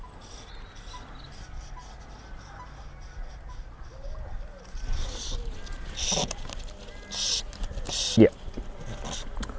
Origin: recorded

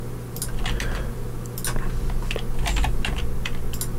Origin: recorded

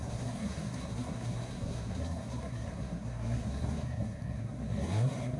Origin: remade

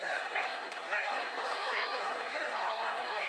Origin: remade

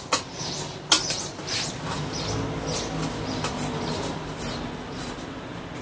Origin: recorded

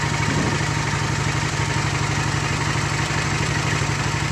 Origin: recorded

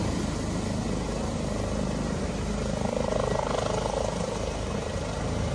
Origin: recorded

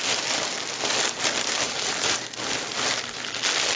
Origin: recorded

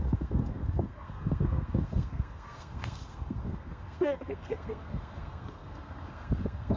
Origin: remade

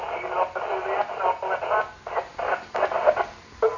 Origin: recorded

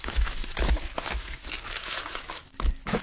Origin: remade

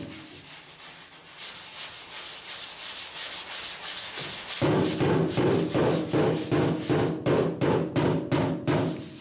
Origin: recorded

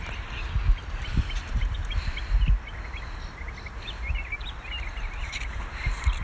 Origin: recorded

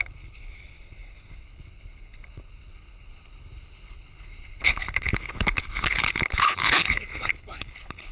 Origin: remade